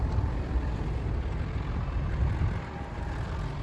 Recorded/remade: recorded